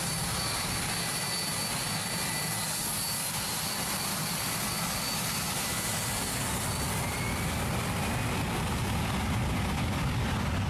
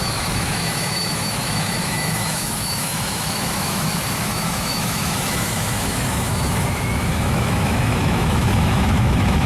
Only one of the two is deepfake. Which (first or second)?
second